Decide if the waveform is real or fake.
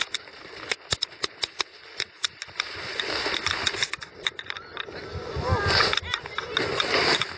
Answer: real